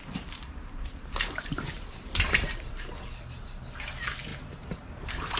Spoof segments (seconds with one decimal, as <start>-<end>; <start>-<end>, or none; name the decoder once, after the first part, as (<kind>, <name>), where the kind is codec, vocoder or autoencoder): 0.0-2.7 (vocoder, BigVGAN v2); 4.3-5.4